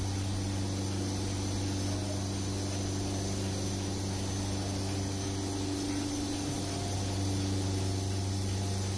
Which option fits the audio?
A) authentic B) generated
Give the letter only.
A